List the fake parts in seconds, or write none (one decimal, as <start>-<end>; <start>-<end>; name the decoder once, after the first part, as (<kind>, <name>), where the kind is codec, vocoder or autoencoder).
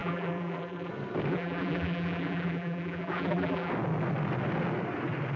0.0-0.9 (vocoder, BigVGAN v2); 1.3-3.7